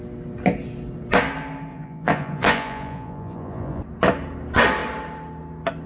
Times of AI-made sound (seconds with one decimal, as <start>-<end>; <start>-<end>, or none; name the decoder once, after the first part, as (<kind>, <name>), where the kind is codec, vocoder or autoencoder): 1.7-3.8 (vocoder, Vocos)